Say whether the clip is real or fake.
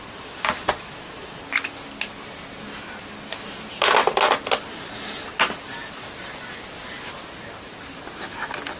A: real